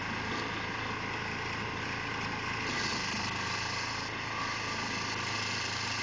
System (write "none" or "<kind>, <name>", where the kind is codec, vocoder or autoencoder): none